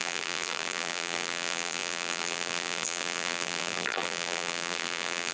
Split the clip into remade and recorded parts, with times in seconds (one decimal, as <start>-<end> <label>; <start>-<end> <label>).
0.0-5.3 remade